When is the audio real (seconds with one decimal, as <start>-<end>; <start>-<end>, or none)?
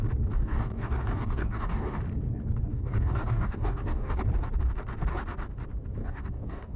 0.0-0.4; 2.0-2.7; 4.1-6.0